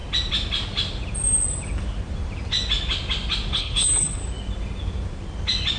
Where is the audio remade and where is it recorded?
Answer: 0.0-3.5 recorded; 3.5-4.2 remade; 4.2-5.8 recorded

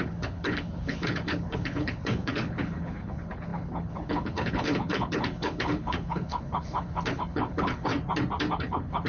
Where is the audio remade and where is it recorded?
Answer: 0.0-7.9 remade; 7.9-8.5 recorded; 8.5-9.1 remade